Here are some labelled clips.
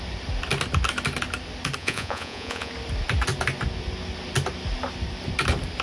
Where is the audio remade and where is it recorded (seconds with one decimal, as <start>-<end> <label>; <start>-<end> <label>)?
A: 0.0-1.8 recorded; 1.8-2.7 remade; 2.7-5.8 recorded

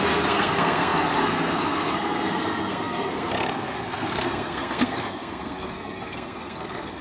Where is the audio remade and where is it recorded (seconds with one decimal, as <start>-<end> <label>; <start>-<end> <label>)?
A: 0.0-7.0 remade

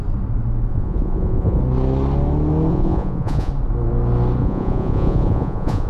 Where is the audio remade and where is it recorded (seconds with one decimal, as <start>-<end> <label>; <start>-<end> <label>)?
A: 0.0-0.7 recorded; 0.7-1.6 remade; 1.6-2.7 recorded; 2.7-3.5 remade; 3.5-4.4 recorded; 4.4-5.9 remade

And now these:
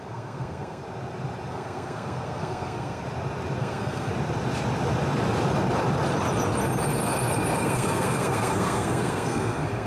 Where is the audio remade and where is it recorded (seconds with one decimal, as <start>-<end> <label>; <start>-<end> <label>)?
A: 0.0-0.8 remade; 0.8-1.5 recorded; 1.5-3.0 remade; 3.0-3.6 recorded; 3.6-4.1 remade; 4.1-7.6 recorded; 7.6-9.9 remade